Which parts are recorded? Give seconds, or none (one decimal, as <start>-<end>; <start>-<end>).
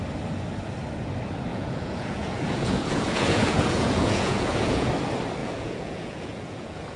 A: 0.0-1.5; 4.9-5.4